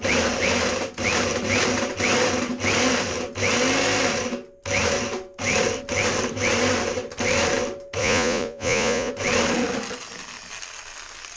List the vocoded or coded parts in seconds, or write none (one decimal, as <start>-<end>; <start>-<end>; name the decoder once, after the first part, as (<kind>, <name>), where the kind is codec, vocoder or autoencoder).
8.0-9.1 (vocoder, Vocos)

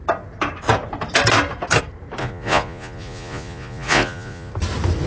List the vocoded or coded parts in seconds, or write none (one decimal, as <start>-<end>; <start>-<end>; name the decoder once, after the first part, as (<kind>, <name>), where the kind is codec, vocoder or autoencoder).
2.2-4.5 (vocoder, Vocos)

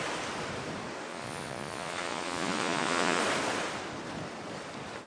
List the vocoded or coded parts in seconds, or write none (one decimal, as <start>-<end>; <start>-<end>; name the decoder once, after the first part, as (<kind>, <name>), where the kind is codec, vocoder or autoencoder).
1.1-3.2 (vocoder, Vocos)

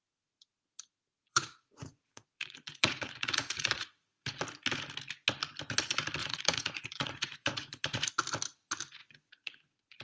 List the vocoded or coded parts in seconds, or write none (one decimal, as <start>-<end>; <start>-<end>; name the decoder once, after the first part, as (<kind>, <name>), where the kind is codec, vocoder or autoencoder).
1.2-4.4 (vocoder, Vocos); 6.2-8.1; 9.0-10.0

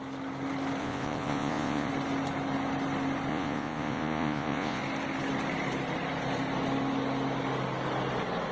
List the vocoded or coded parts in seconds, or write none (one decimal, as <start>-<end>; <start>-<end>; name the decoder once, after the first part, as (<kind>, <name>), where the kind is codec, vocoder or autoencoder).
0.8-1.9 (vocoder, Vocos); 3.3-4.8

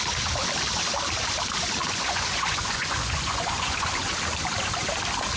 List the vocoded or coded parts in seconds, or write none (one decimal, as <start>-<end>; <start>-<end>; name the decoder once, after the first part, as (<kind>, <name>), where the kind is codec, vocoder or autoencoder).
1.8-4.1 (vocoder, Vocos)